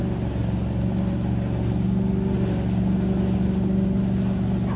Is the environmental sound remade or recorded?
recorded